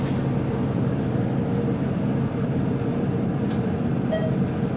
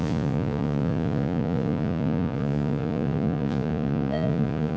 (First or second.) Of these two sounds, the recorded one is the first